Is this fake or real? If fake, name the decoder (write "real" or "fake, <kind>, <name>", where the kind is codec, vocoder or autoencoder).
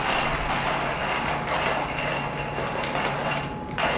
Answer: real